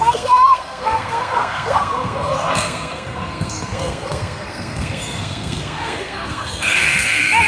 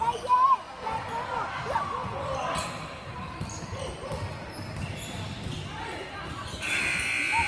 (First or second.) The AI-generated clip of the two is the first